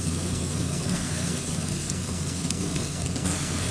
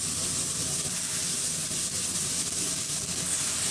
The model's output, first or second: first